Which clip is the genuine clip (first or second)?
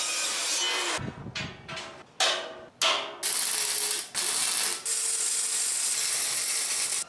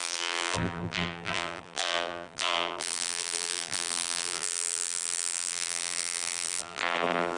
first